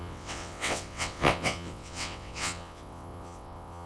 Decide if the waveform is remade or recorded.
remade